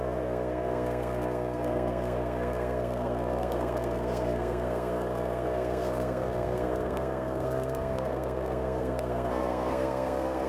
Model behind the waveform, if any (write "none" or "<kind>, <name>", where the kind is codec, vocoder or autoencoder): codec, SNAC